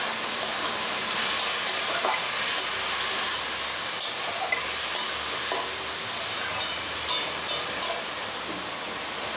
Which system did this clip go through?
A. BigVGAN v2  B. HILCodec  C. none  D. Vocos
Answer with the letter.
A